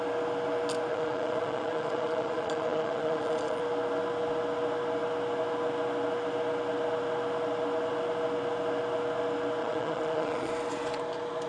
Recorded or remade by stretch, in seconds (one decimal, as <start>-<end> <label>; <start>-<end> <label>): 0.0-0.9 recorded; 0.9-3.6 remade; 3.6-9.6 recorded; 9.6-10.5 remade; 10.5-11.5 recorded